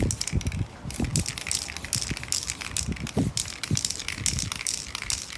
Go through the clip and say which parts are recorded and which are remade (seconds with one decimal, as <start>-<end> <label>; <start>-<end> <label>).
0.0-5.4 recorded